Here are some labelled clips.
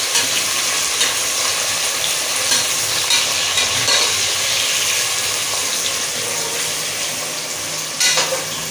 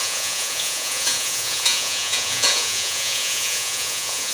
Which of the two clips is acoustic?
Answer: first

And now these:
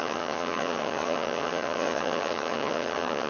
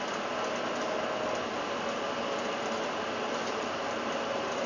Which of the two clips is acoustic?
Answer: second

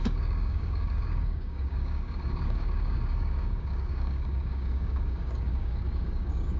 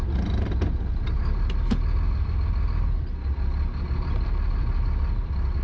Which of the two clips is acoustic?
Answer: second